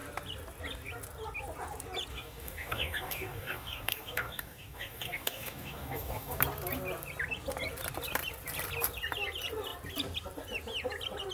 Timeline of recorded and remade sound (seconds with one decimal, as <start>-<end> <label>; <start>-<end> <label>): 0.0-2.1 recorded; 2.1-6.4 remade; 6.4-11.3 recorded